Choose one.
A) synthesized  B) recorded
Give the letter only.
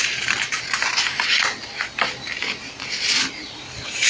B